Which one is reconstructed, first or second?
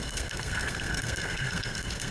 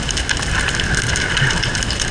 first